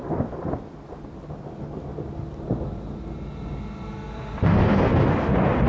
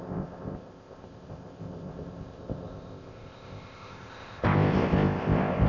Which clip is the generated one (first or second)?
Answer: second